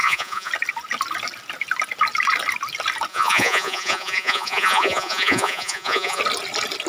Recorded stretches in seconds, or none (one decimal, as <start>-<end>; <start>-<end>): 0.5-3.1; 6.2-6.9